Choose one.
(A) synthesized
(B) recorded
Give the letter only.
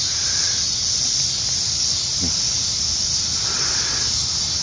B